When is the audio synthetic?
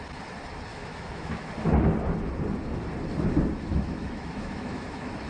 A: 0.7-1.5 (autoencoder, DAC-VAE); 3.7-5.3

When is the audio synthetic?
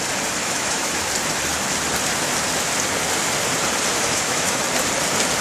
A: 0.4-1.1 (autoencoder, DAC-VAE); 3.9-4.6